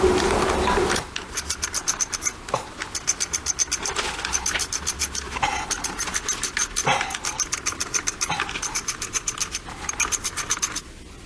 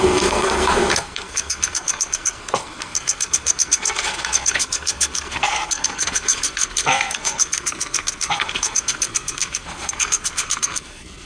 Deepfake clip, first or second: second